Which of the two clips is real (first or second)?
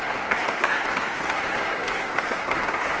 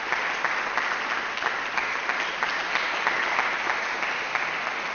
second